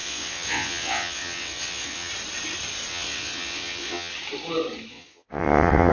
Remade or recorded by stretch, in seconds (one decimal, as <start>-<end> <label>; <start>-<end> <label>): 0.0-2.1 remade; 2.1-2.9 recorded; 2.9-4.1 remade; 4.1-4.9 recorded; 4.9-5.9 remade